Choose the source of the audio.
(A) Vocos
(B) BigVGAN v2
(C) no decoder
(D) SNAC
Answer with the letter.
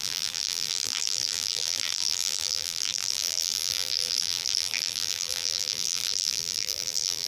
B